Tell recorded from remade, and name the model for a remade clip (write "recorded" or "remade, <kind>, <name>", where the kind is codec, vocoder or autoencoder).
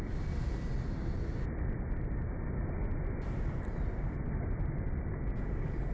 recorded